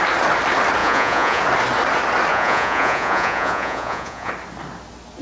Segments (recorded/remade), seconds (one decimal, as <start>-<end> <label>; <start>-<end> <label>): 0.0-0.8 recorded; 0.8-1.4 remade; 1.4-2.3 recorded; 2.3-4.3 remade; 4.3-5.2 recorded